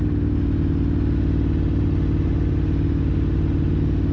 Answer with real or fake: real